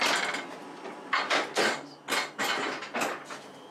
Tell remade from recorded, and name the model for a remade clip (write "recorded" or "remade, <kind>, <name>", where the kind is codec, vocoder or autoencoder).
recorded